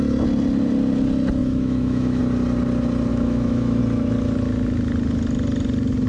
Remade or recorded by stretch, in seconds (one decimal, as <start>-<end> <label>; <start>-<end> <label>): 0.0-1.4 recorded; 1.4-2.2 remade; 2.2-3.1 recorded; 3.1-3.8 remade; 3.8-6.1 recorded